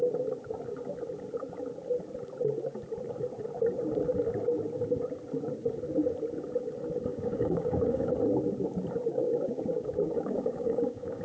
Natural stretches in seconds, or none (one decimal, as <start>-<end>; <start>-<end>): 0.0-7.1; 8.1-9.1